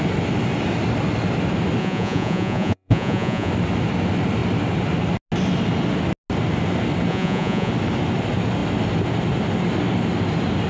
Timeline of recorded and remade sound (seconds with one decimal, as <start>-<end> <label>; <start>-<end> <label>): 0.0-1.8 recorded; 1.8-3.5 remade; 3.5-7.1 recorded; 7.1-7.7 remade; 7.7-10.7 recorded